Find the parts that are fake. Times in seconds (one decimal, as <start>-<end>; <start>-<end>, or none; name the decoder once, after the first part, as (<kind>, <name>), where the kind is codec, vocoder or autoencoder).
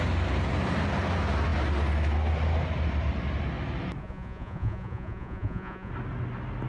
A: 4.0-5.9 (vocoder, Vocos)